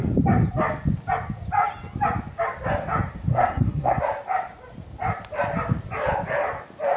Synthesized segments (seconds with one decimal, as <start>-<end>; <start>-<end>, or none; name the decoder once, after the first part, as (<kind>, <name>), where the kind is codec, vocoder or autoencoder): 3.3-4.0 (codec, SNAC)